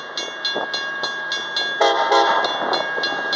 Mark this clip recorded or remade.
recorded